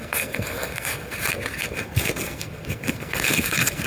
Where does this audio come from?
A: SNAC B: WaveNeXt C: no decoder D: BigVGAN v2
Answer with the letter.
A